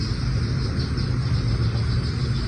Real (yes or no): yes